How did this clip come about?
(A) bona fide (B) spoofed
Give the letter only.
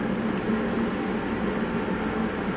A